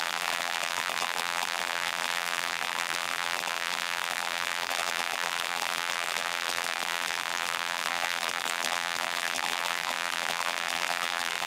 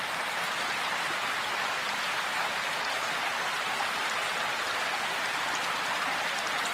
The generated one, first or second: first